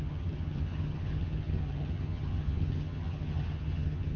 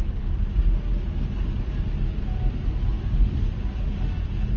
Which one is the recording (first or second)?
second